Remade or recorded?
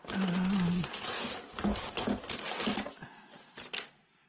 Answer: recorded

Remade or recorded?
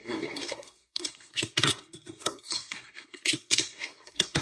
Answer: remade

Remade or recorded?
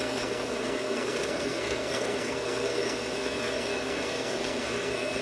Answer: remade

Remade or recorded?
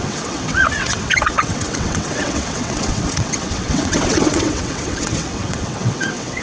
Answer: remade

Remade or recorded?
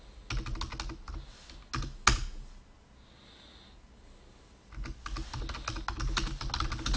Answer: recorded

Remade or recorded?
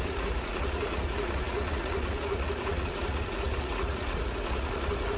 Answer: remade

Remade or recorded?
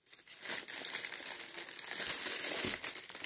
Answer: recorded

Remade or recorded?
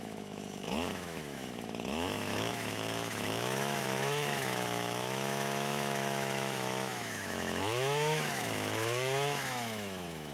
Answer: remade